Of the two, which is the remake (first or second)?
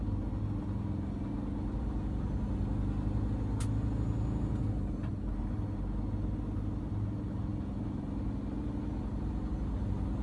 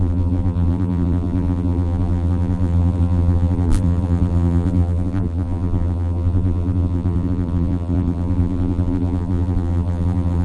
second